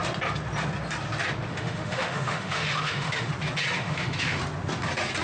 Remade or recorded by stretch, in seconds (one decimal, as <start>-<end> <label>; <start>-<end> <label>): 0.0-1.5 recorded; 1.5-3.3 remade; 3.3-3.8 recorded; 3.8-4.4 remade; 4.4-5.2 recorded